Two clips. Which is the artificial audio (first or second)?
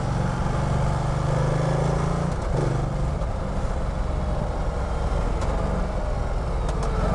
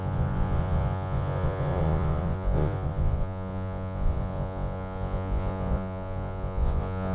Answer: second